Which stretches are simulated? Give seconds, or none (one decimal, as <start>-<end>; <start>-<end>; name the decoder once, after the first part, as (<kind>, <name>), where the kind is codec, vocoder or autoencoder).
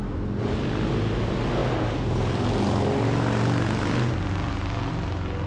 none